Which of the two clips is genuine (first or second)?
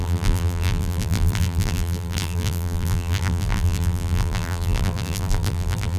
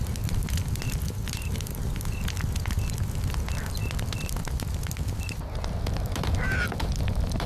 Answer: second